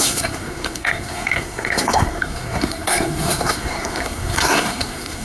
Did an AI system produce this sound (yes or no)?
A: yes